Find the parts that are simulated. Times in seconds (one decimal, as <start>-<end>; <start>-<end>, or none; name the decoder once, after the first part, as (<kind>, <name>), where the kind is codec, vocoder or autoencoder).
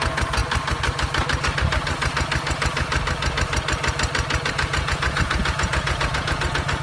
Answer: 0.0-0.4 (vocoder, Vocos); 4.5-6.8